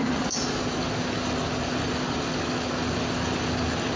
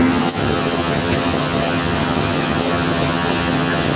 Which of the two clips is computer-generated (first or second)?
second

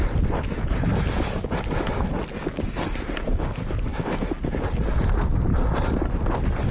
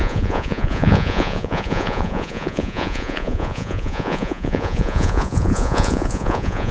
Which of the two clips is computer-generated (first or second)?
second